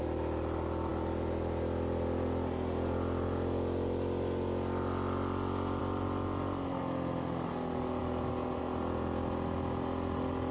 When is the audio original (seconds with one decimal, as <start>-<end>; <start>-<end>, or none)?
0.0-10.5